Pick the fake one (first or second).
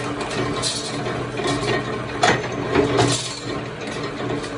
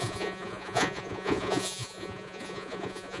second